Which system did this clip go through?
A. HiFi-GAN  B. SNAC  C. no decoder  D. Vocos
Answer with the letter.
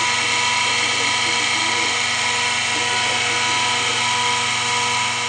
C